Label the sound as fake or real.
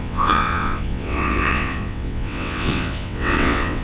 fake